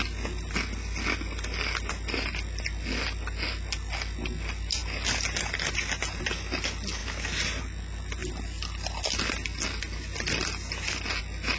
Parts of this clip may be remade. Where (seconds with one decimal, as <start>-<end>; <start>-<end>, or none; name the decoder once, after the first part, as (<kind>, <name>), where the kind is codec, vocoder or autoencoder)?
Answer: none